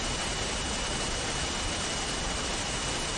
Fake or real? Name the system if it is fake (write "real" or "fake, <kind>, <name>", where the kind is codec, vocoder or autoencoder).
real